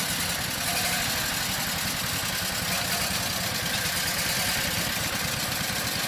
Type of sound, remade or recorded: recorded